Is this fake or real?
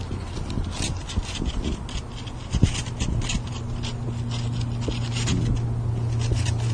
real